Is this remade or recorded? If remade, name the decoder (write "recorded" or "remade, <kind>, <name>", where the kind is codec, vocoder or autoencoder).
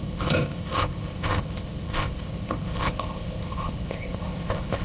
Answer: remade, codec, ZipCodec